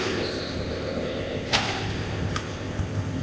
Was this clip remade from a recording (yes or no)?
yes